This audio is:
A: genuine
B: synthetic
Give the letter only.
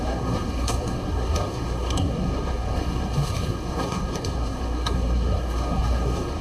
B